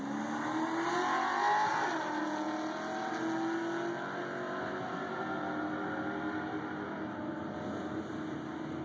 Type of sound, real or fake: real